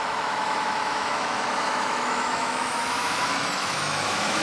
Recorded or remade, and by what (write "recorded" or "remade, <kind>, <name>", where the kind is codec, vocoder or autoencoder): remade, autoencoder, DAC-VAE